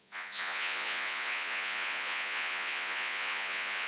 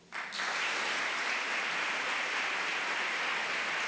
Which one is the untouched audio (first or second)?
second